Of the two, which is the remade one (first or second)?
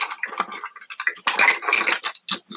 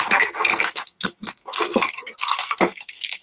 second